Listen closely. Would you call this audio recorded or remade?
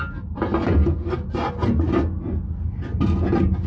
recorded